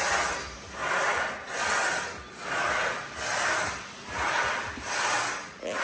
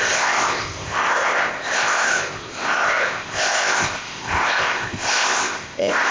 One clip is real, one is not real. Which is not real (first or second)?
second